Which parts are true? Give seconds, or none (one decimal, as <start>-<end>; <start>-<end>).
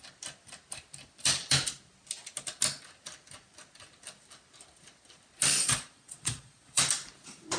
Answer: 0.0-5.6; 6.8-7.6